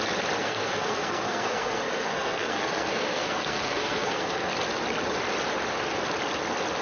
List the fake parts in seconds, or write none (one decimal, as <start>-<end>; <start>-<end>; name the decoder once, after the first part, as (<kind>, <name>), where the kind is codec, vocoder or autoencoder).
0.4-4.5 (codec, SNAC)